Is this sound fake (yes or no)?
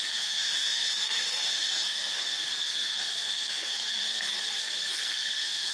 yes